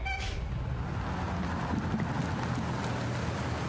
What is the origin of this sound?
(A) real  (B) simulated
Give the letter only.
A